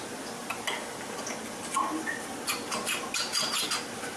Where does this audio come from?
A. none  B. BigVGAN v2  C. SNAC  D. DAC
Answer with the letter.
A